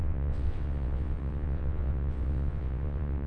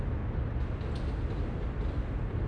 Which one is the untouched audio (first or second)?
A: second